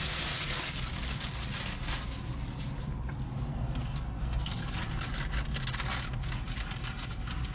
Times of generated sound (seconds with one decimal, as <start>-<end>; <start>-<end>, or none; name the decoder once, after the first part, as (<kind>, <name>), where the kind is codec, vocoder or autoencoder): 3.5-4.5 (codec, SNAC)